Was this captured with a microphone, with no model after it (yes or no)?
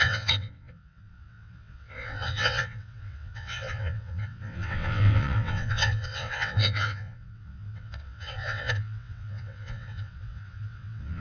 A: no